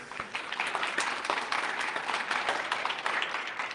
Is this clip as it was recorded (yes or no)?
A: yes